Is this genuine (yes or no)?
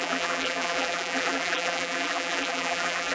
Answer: no